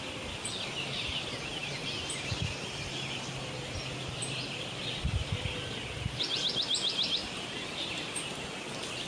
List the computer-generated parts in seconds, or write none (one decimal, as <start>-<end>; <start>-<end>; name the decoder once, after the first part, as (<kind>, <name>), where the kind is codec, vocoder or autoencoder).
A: none